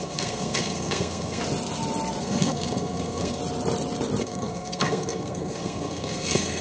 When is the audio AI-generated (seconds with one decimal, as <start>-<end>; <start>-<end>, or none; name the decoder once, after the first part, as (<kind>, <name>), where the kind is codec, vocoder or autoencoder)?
0.0-1.4 (codec, SNAC); 2.2-3.4; 4.2-6.6

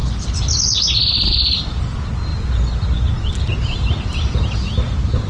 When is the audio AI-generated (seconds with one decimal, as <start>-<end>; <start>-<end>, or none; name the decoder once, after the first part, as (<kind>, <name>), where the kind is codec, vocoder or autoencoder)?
0.0-0.8 (vocoder, BigVGAN v2)

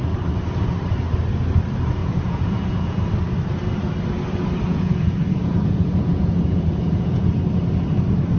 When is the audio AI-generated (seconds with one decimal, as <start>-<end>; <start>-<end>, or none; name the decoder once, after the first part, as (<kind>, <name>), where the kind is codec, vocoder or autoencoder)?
2.0-3.0 (vocoder, Vocos); 4.7-7.3

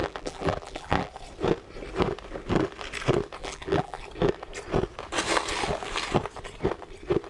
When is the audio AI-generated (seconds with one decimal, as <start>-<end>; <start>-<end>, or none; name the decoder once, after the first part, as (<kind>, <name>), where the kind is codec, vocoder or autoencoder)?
0.0-1.1 (vocoder, BigVGAN v2); 3.4-4.0